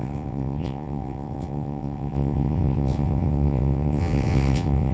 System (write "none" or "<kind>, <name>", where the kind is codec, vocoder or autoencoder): vocoder, WaveNeXt